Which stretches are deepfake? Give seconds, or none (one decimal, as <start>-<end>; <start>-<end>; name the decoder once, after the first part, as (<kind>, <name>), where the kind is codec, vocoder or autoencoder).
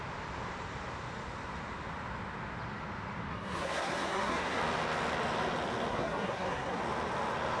3.3-4.6 (codec, SNAC); 5.9-6.8